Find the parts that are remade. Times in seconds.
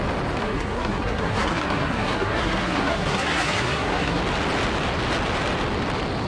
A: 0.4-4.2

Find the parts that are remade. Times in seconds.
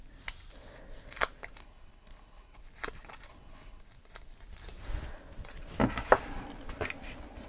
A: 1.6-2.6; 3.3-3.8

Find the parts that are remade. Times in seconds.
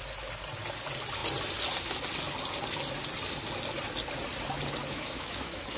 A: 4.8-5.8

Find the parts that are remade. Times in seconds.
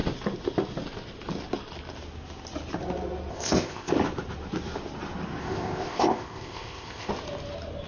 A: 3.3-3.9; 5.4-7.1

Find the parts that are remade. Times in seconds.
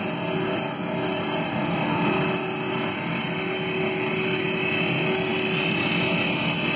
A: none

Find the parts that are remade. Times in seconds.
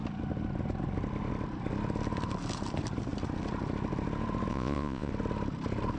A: 4.5-5.1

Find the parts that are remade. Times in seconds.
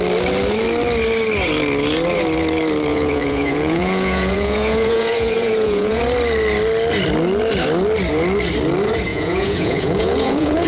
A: 2.9-6.0; 9.1-10.7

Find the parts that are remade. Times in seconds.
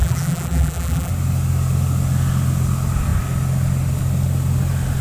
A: 0.0-1.1